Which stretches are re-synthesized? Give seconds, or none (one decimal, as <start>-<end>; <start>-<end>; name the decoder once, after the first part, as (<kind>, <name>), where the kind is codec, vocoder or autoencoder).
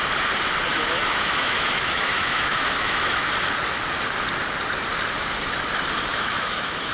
0.7-3.3 (autoencoder, DAC-VAE); 6.1-6.9